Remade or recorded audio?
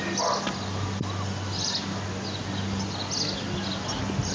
recorded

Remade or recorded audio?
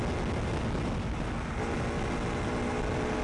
recorded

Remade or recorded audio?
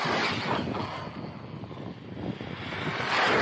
recorded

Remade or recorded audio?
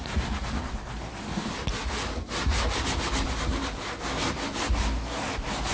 recorded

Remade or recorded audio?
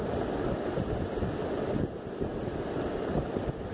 recorded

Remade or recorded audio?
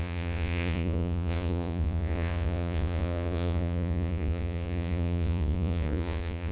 remade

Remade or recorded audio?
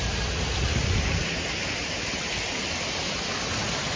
recorded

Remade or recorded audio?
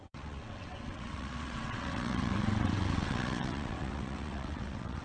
remade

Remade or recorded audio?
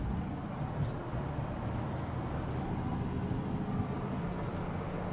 recorded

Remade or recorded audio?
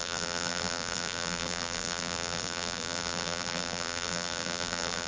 remade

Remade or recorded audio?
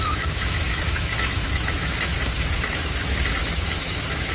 remade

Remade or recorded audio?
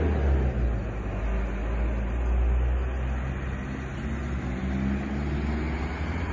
recorded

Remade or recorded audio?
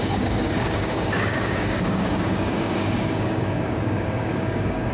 remade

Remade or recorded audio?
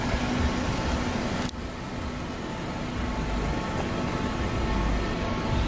recorded